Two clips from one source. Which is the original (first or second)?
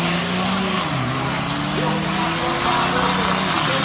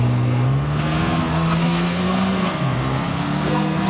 first